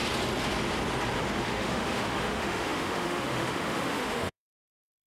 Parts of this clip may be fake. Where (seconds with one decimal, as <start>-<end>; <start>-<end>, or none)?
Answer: 1.4-5.1